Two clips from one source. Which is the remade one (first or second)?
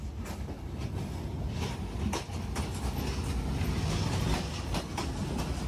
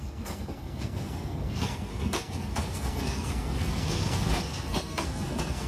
second